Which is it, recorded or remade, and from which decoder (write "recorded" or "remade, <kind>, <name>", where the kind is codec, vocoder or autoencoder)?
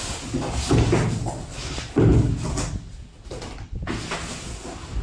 recorded